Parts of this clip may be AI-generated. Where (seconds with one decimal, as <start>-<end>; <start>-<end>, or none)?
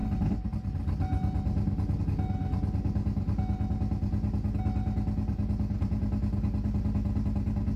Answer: none